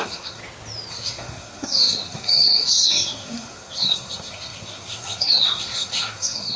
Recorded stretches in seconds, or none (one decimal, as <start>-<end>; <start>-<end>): 0.4-0.9

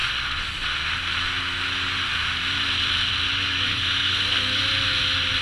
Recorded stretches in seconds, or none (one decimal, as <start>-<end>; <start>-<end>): 0.0-3.7; 4.6-5.4

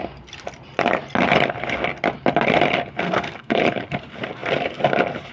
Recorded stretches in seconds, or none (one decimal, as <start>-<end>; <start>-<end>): 0.0-3.0; 3.6-5.3

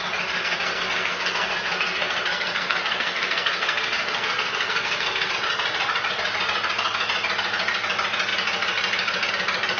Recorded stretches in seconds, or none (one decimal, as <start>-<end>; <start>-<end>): 0.0-0.4; 5.3-9.8

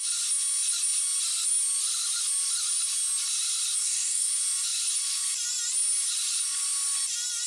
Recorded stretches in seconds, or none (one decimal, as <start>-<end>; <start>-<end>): 0.0-3.8; 4.3-7.5

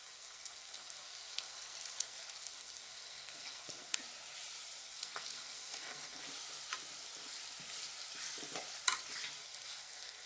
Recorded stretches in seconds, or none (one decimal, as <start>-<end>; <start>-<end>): 4.0-4.8; 6.2-9.4

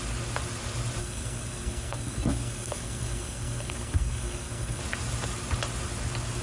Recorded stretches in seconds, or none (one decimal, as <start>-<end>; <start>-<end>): 0.0-1.0; 4.8-6.4

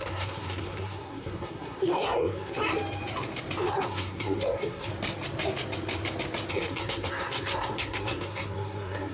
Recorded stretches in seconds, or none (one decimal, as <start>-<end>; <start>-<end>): 2.6-3.7; 4.9-6.5